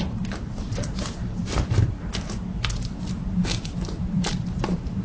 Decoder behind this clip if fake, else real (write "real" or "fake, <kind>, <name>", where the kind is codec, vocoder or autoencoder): fake, vocoder, BigVGAN v2